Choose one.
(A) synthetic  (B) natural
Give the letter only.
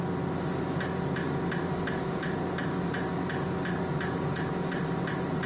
B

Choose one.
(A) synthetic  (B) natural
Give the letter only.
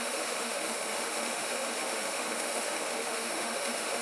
A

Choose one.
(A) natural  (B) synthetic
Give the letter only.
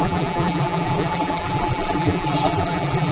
B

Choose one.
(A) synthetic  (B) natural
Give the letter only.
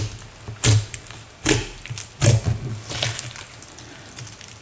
B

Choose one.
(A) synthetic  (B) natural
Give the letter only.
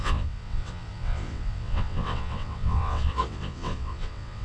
A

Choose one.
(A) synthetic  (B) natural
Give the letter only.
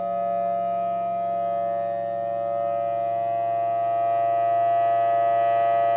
B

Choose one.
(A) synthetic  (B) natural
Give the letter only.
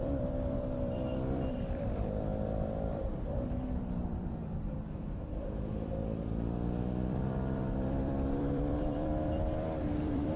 A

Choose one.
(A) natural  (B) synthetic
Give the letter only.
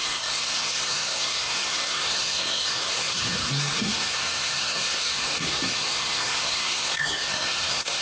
B